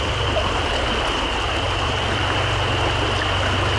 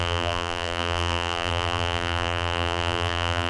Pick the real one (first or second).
first